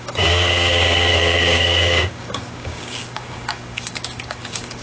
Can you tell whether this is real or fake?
fake